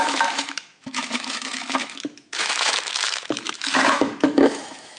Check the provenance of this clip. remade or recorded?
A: remade